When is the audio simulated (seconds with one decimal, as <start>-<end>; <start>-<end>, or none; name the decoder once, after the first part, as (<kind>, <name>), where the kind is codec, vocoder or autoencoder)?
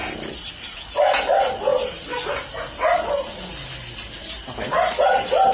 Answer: none